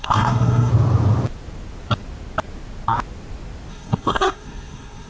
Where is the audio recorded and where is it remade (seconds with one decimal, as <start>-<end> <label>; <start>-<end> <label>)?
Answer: 0.0-0.7 remade; 0.7-3.7 recorded; 3.7-5.1 remade

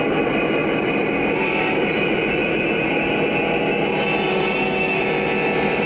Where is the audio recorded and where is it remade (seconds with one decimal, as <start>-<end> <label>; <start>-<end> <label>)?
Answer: 0.0-4.3 recorded; 4.3-5.0 remade; 5.0-5.9 recorded